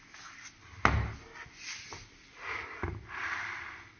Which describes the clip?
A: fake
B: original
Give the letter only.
B